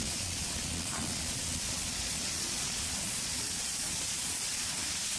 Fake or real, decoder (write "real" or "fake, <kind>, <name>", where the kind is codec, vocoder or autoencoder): fake, vocoder, Vocos